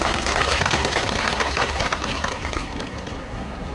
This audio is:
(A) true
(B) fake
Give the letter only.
B